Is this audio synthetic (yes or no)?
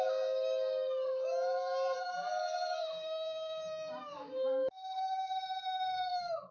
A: yes